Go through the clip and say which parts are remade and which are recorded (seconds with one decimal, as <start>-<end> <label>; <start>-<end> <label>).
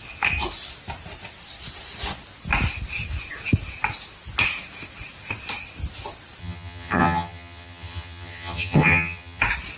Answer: 0.0-6.4 recorded; 6.4-9.4 remade; 9.4-9.8 recorded